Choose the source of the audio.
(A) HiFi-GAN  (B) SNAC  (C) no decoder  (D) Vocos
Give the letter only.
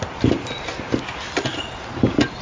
C